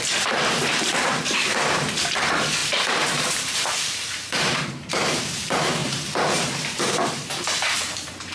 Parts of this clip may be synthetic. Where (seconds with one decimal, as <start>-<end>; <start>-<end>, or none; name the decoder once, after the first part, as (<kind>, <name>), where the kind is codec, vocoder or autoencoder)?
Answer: 0.0-8.3 (vocoder, BigVGAN v2)